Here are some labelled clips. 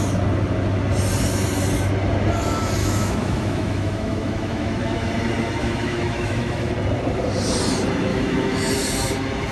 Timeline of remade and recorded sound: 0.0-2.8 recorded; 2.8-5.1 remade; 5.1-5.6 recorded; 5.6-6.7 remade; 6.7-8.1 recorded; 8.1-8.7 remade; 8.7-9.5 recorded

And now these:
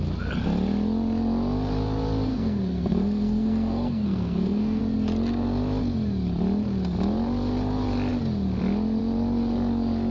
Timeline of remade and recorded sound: 0.0-2.3 recorded; 2.3-4.8 remade; 4.8-10.1 recorded

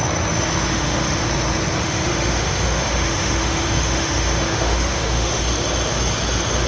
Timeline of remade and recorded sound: 0.0-0.7 recorded; 0.7-1.2 remade; 1.2-1.8 recorded; 1.8-5.4 remade; 5.4-6.7 recorded

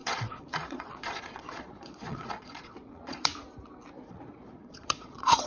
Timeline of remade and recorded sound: 0.0-3.3 remade; 3.3-4.1 recorded; 4.1-5.5 remade

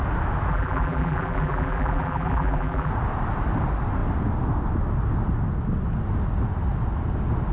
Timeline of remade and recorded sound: 0.0-0.5 recorded; 0.5-2.9 remade; 2.9-7.5 recorded

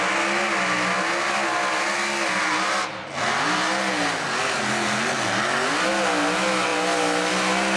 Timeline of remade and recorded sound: 0.0-7.8 recorded

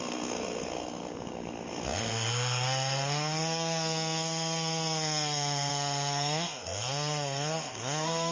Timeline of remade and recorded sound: 0.0-8.3 remade

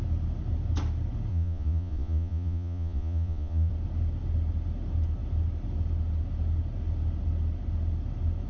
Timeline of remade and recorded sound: 0.0-1.3 recorded; 1.3-3.7 remade; 3.7-8.5 recorded